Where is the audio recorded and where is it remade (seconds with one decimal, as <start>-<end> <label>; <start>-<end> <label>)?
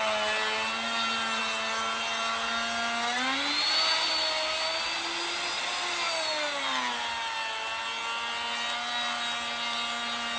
0.0-10.4 recorded